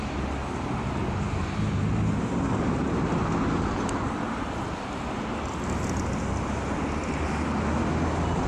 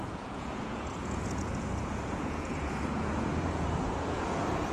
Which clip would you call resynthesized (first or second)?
second